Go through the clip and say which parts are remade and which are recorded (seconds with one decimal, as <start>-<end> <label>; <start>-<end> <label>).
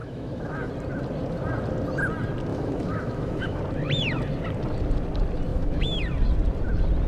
0.0-0.7 remade; 0.7-2.5 recorded; 2.5-3.6 remade; 3.6-5.5 recorded; 5.5-6.0 remade; 6.0-7.1 recorded